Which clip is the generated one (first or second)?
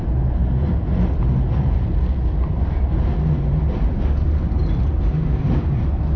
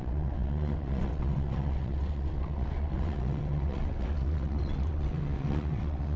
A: second